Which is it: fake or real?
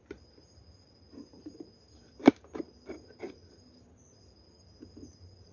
real